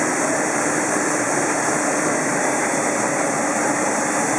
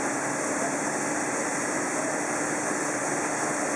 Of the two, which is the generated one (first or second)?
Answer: first